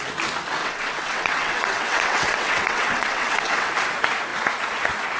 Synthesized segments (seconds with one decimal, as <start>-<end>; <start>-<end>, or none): 0.6-3.7